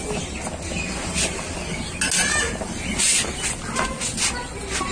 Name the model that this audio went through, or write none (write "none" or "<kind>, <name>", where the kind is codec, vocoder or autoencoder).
none